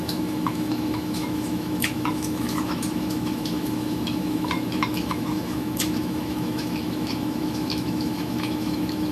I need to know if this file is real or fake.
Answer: fake